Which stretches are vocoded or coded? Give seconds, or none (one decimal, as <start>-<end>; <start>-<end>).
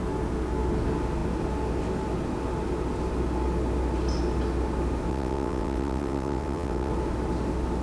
5.1-6.9